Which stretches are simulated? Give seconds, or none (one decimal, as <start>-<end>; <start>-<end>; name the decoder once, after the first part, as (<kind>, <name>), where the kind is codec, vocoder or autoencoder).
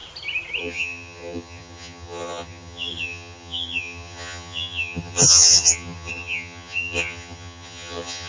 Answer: 0.6-8.3 (vocoder, HiFi-GAN)